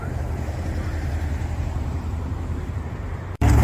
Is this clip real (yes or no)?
no